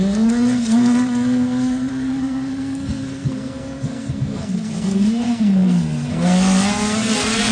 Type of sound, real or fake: fake